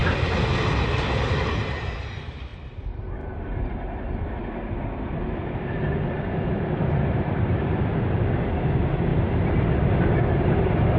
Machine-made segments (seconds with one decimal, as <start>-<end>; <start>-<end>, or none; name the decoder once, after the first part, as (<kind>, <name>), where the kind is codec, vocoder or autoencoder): none